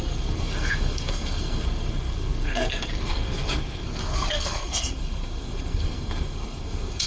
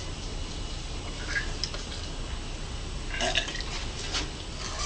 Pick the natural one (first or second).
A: second